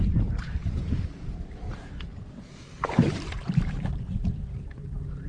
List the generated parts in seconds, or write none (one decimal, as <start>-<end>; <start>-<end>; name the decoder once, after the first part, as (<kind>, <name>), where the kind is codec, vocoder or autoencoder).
0.0-2.1 (vocoder, BigVGAN v2); 2.7-5.3